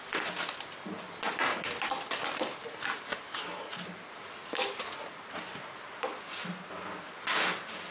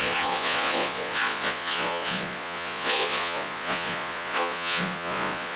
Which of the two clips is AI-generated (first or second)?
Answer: second